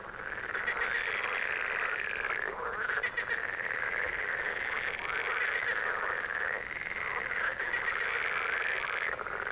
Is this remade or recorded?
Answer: recorded